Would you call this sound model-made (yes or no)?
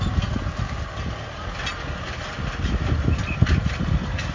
no